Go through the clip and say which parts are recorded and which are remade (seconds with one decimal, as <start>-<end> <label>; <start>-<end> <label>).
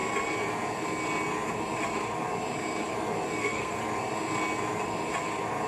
0.0-3.4 recorded; 3.4-3.8 remade; 3.8-5.7 recorded